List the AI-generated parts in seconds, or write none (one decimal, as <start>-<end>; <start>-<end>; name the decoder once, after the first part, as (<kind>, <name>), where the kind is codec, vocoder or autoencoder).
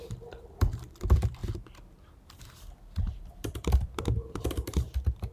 0.0-1.4 (vocoder, BigVGAN v2); 2.4-5.3